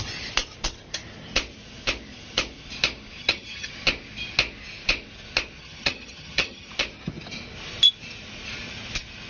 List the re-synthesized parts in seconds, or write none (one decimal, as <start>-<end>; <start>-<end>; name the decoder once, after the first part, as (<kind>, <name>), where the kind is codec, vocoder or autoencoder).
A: 3.2-3.7 (vocoder, HiFi-GAN); 5.6-6.7